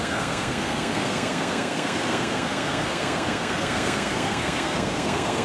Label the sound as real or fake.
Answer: fake